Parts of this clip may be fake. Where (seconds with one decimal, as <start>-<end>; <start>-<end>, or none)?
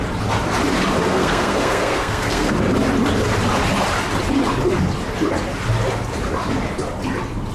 1.1-2.5